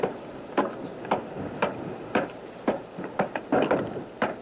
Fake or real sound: real